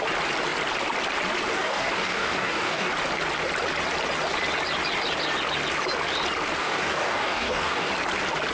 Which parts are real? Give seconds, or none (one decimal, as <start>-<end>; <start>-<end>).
0.0-1.5; 2.9-6.6; 7.9-8.5